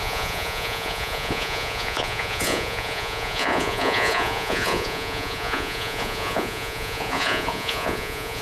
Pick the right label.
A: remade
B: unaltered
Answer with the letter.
A